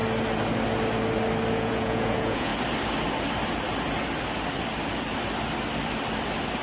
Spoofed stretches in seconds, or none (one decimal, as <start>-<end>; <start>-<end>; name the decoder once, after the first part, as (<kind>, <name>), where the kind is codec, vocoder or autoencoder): 1.5-2.5 (vocoder, Vocos)